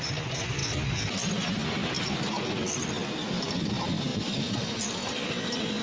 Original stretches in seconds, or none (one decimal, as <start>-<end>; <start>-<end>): 0.0-5.8